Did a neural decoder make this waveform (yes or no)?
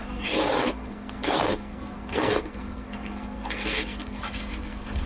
yes